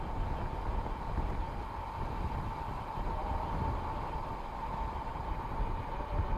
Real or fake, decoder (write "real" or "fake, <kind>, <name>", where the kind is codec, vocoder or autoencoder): real